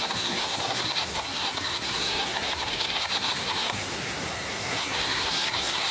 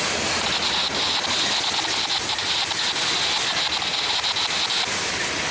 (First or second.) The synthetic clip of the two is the first